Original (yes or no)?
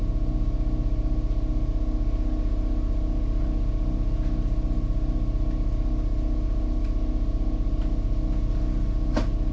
yes